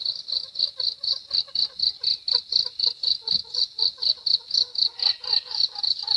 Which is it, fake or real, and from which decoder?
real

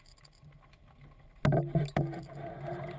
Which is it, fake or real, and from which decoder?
real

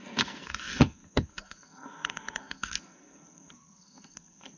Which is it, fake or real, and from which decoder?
fake, codec, SNAC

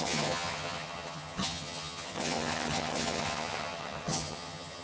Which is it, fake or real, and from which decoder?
fake, vocoder, HiFi-GAN